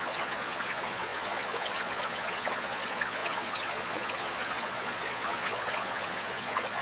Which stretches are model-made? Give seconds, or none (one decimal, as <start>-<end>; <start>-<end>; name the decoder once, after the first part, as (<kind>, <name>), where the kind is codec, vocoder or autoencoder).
0.0-6.8 (vocoder, Vocos)